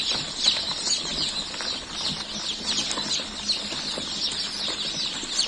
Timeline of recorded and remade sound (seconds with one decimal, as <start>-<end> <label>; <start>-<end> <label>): 0.0-1.1 remade; 1.1-4.4 recorded; 4.4-5.5 remade

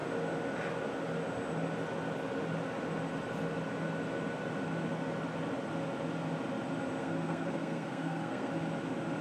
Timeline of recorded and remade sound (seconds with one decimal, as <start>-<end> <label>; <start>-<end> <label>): 0.0-7.0 recorded; 7.0-8.5 remade; 8.5-9.2 recorded

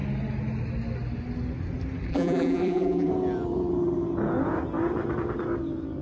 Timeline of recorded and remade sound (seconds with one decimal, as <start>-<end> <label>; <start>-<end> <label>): 0.0-2.1 recorded; 2.1-3.1 remade; 3.1-6.0 recorded

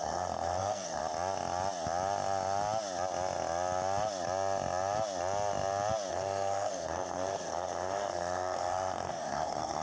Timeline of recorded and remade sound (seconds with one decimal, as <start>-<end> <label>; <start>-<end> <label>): 0.0-1.0 remade; 1.0-6.1 recorded; 6.1-9.8 remade

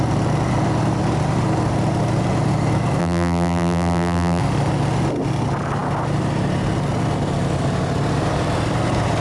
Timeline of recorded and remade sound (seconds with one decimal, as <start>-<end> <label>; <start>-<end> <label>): 0.0-3.0 recorded; 3.0-4.4 remade; 4.4-9.2 recorded